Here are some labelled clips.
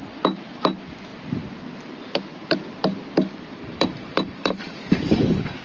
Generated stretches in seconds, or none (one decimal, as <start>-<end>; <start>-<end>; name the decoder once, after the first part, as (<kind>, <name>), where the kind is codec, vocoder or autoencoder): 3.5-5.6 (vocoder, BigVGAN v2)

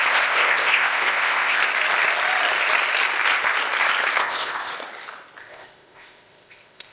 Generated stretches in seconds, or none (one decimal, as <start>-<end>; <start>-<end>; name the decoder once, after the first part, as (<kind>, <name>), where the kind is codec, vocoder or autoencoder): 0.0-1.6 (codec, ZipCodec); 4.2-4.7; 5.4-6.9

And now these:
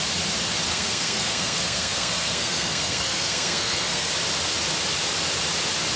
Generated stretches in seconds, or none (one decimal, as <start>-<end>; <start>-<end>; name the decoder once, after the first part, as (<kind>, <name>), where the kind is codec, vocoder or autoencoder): 0.7-4.1 (codec, SNAC)

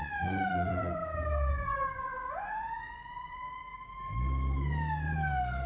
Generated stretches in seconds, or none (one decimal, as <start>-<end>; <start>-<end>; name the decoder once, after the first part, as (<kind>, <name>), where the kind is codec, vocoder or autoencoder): 0.0-1.0 (vocoder, Vocos); 1.5-3.6

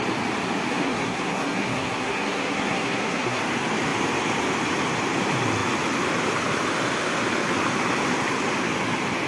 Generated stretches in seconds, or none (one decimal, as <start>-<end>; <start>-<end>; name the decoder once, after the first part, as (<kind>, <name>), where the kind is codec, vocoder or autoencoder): 0.7-3.4 (codec, SNAC)

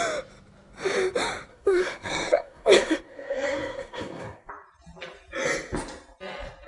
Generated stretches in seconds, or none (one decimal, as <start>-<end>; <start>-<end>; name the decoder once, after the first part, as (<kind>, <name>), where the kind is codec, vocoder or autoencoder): 1.5-4.5 (codec, SNAC)